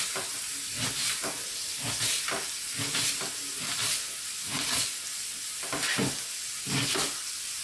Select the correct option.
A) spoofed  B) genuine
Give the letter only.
B